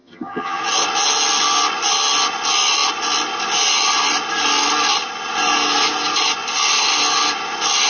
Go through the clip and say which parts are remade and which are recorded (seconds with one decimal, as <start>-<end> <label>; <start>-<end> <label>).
0.0-0.6 remade; 0.6-7.9 recorded